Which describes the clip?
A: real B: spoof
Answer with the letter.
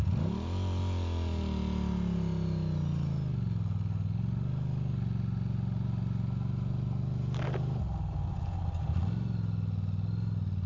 A